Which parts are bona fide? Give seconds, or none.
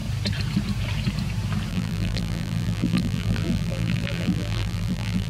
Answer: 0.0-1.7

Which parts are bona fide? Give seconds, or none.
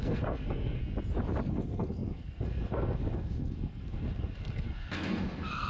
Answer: 0.8-1.5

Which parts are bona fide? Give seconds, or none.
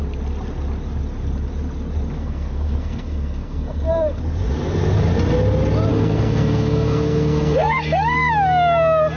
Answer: 0.0-2.2; 4.2-5.9; 8.3-9.2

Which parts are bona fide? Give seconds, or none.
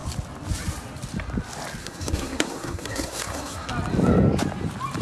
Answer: 0.0-1.8; 3.7-5.0